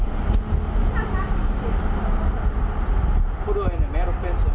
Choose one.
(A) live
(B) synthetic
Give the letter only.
A